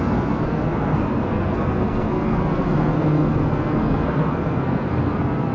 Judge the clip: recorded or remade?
remade